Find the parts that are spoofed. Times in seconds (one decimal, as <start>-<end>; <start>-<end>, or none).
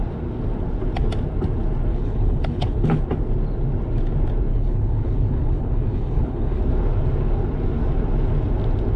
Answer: 1.9-3.0; 4.5-6.6